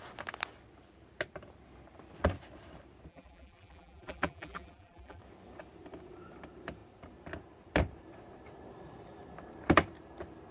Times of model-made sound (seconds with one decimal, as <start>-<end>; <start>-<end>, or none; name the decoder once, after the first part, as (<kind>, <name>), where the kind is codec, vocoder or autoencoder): 3.1-5.2 (vocoder, BigVGAN v2)